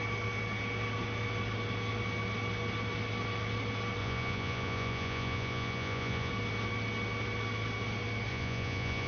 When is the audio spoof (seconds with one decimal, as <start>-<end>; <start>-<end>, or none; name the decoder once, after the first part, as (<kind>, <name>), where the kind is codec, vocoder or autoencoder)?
4.0-6.3 (vocoder, Vocos); 8.3-9.1